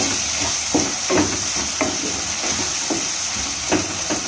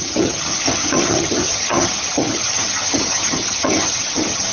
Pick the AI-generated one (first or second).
second